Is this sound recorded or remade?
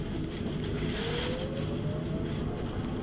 recorded